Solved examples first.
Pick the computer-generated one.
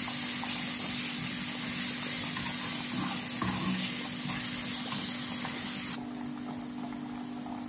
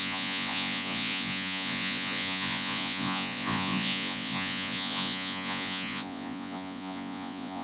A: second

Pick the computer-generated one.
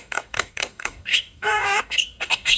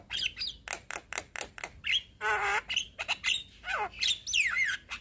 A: first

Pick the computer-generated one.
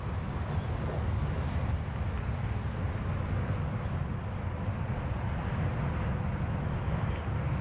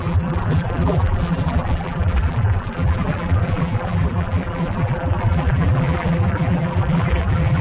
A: second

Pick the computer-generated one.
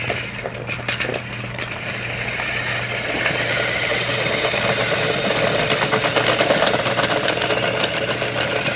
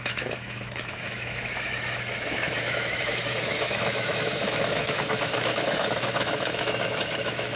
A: second